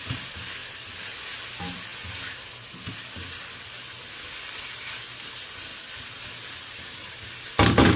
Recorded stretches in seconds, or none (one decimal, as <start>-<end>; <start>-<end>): 0.0-8.0